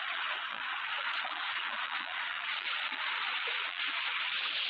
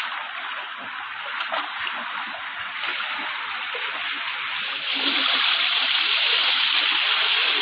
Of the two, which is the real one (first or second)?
second